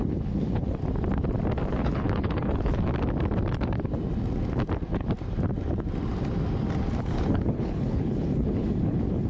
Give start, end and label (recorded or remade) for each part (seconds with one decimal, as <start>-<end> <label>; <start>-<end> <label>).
0.0-0.8 remade; 0.8-1.7 recorded; 1.7-2.9 remade; 2.9-7.0 recorded; 7.0-9.3 remade